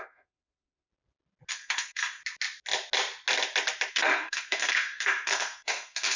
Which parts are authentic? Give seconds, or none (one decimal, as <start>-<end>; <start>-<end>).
0.9-1.5; 2.2-3.9